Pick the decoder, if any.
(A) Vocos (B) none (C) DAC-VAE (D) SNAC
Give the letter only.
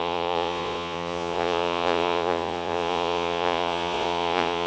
A